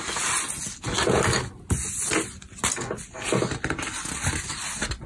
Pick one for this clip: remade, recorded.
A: recorded